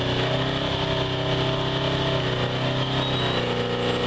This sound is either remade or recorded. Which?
recorded